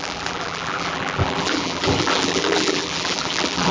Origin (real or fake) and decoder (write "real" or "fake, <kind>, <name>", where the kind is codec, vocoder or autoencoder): fake, vocoder, BigVGAN v2